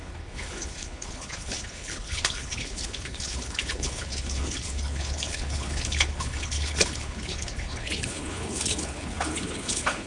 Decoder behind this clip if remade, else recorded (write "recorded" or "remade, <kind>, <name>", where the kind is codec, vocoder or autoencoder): remade, codec, HILCodec